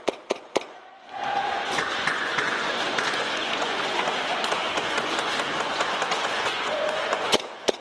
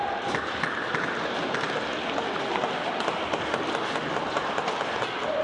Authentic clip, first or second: second